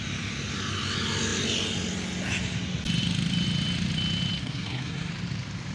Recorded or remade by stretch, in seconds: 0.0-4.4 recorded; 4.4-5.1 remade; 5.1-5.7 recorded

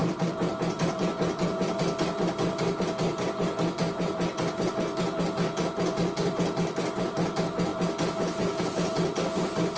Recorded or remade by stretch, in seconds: 0.0-9.8 recorded

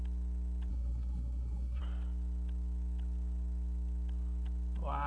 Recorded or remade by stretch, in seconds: 0.0-0.7 recorded; 0.7-1.8 remade; 1.8-5.1 recorded

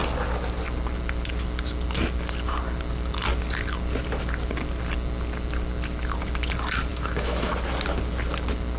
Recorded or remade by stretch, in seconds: 0.0-6.9 recorded; 6.9-7.5 remade; 7.5-8.8 recorded

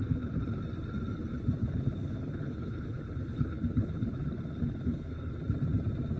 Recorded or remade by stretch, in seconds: 0.0-0.6 remade; 0.6-1.6 recorded; 1.6-5.3 remade; 5.3-6.2 recorded

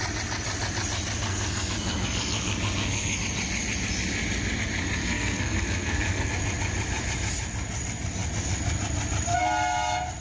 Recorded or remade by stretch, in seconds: 0.0-1.3 recorded; 1.3-3.2 remade; 3.2-5.0 recorded; 5.0-6.3 remade; 6.3-10.2 recorded